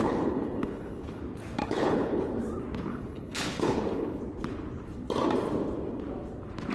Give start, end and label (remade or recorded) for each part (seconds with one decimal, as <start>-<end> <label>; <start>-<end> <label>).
0.0-1.2 remade; 1.2-1.6 recorded; 1.6-2.3 remade; 2.3-2.9 recorded; 2.9-4.2 remade; 4.2-6.7 recorded